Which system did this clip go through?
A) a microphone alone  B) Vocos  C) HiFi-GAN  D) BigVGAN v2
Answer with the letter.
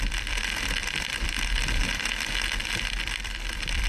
D